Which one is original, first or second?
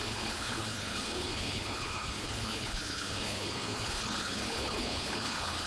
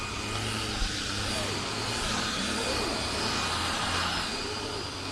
second